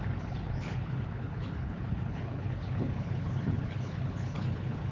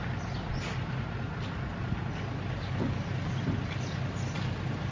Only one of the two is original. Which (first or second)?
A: second